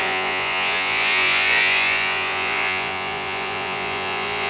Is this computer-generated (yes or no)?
yes